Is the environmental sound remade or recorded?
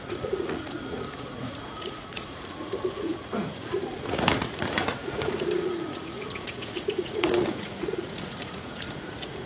remade